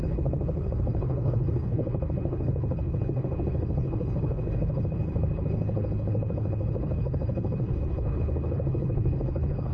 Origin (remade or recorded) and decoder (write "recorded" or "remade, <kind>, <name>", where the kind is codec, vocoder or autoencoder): remade, codec, HILCodec